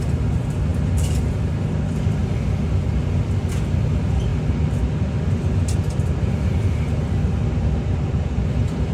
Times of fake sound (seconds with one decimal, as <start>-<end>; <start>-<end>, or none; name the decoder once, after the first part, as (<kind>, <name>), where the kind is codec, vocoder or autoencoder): 0.0-2.2 (vocoder, BigVGAN v2); 3.9-4.3; 7.9-8.9